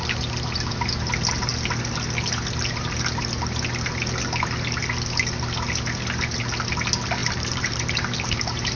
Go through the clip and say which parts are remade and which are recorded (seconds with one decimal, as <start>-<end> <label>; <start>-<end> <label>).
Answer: 0.0-7.2 recorded; 7.2-8.7 remade